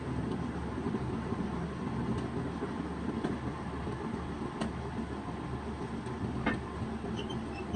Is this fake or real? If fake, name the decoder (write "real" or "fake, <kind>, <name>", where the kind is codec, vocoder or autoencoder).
real